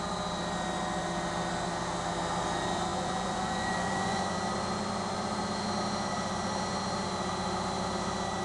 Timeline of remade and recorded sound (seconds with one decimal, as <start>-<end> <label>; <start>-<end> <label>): 0.0-2.9 recorded; 2.9-4.3 remade; 4.3-8.4 recorded